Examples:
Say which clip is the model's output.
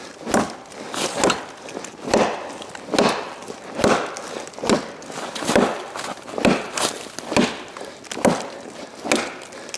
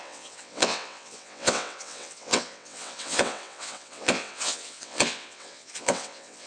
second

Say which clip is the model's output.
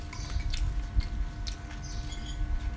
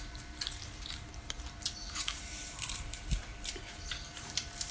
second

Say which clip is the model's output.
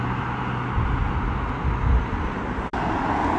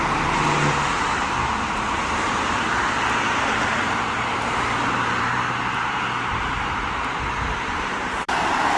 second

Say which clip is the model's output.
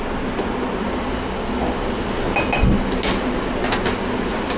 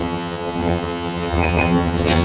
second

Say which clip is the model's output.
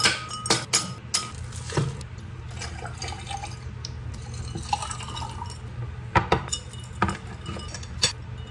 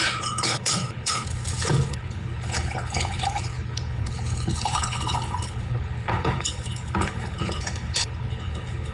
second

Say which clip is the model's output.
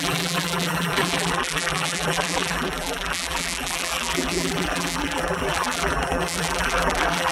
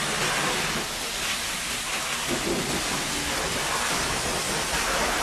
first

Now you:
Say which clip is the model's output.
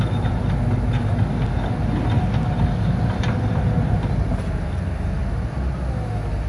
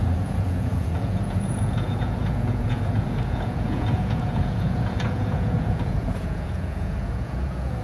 second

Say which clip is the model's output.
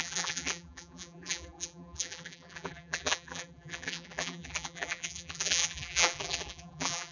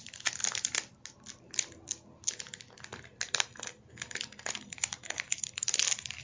first